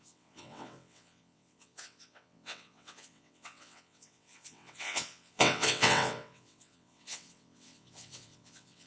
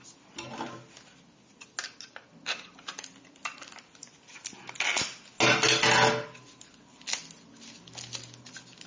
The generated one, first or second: first